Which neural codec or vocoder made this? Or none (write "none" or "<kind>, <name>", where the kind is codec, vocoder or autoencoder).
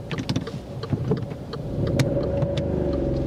none